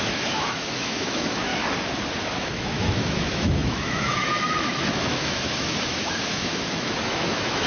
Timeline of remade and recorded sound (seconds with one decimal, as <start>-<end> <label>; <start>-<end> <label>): 0.0-1.5 remade; 1.5-2.2 recorded; 2.2-7.7 remade

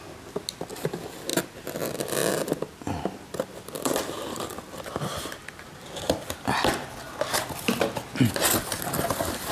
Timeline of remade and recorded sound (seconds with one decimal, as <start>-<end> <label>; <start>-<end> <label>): 0.0-9.5 recorded

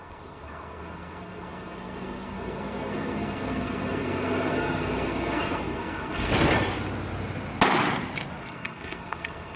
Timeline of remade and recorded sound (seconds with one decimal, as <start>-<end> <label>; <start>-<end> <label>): 0.0-6.3 remade; 6.3-8.4 recorded; 8.4-9.6 remade

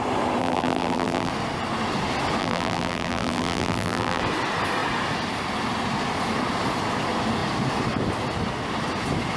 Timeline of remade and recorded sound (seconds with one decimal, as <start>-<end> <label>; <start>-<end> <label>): 0.0-0.4 recorded; 0.4-1.3 remade; 1.3-2.4 recorded; 2.4-4.2 remade; 4.2-9.4 recorded

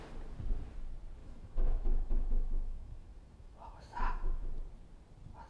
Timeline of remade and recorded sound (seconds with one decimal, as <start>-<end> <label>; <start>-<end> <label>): 0.0-1.2 recorded; 1.2-4.5 remade; 4.5-5.5 recorded